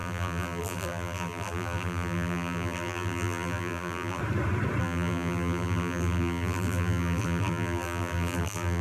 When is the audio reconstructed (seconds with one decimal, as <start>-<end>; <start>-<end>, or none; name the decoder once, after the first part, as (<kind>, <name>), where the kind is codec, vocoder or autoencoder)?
0.0-4.2 (vocoder, BigVGAN v2); 4.8-8.8